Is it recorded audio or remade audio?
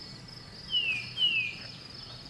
recorded